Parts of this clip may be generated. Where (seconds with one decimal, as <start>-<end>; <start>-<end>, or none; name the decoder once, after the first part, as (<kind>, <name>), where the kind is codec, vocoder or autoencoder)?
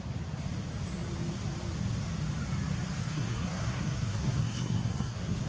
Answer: 3.0-5.5 (codec, SNAC)